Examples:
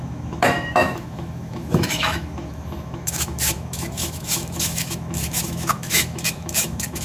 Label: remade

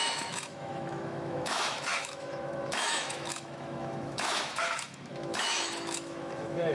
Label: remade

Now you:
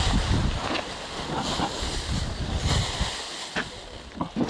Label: recorded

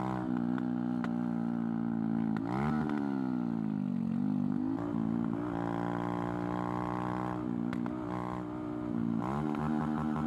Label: recorded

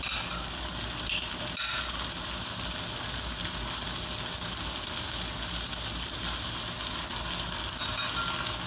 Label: recorded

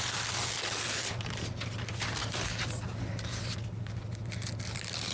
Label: recorded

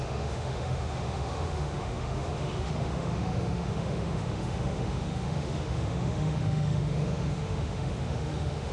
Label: remade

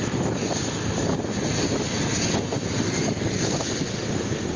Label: recorded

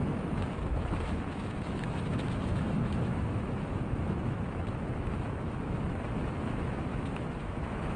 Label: remade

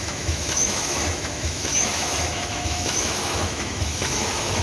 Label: remade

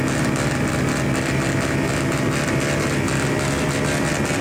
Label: recorded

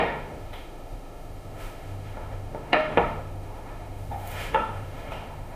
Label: remade